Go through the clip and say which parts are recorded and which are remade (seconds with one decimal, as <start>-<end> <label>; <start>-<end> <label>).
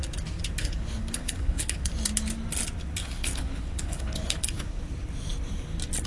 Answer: 0.0-0.6 recorded; 0.6-1.9 remade; 1.9-3.0 recorded; 3.0-4.8 remade; 4.8-6.1 recorded